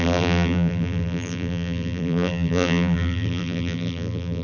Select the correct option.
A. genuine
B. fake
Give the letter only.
B